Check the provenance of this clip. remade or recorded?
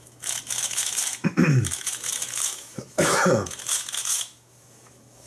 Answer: remade